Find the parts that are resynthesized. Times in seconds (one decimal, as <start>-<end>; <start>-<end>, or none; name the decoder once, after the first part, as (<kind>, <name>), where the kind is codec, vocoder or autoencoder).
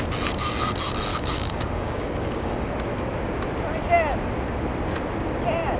1.1-2.7 (codec, DAC)